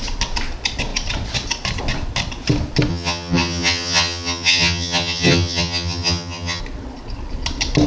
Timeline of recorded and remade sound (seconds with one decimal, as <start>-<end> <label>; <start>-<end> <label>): 0.0-2.9 recorded; 2.9-6.6 remade; 6.6-7.9 recorded